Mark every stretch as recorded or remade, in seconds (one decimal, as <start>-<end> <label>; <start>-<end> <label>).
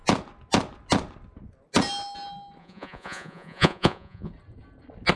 0.0-2.6 recorded; 2.6-4.3 remade; 4.3-5.2 recorded